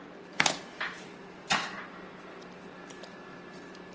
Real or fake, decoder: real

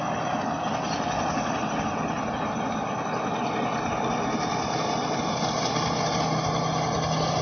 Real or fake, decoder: real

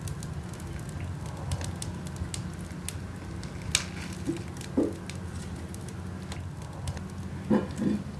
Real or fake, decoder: real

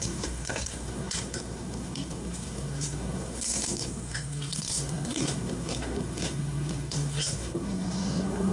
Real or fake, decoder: fake, codec, SNAC